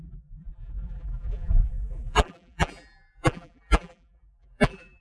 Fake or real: fake